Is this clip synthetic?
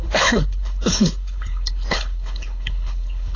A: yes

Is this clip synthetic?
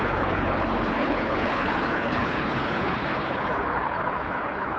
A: yes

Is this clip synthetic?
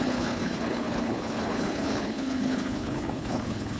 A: yes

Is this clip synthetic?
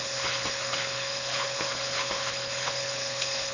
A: yes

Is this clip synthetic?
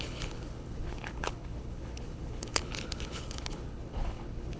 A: yes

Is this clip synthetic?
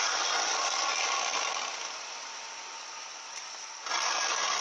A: no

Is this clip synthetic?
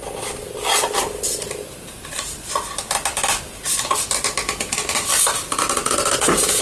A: no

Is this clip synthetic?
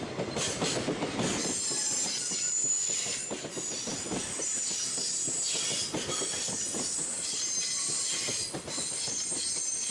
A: no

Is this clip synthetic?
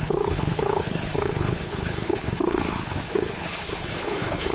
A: yes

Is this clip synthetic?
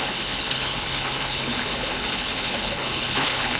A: yes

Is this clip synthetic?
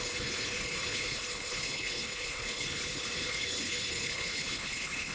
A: yes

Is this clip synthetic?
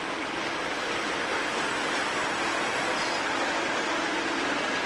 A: no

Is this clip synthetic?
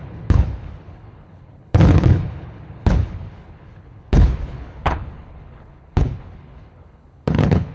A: yes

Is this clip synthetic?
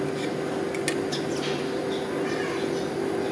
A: no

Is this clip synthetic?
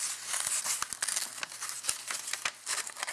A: no